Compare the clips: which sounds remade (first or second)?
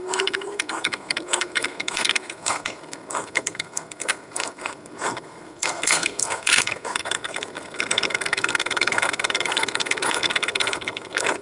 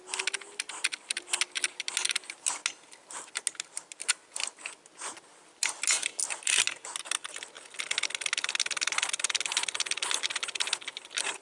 first